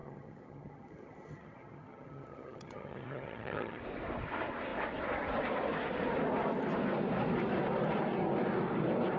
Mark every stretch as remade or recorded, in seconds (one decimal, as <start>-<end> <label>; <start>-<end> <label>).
0.0-3.8 remade; 3.8-9.2 recorded